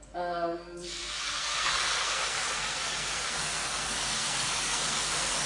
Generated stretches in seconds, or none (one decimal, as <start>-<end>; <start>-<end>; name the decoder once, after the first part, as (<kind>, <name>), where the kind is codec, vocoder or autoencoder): 0.0-5.5 (codec, SNAC)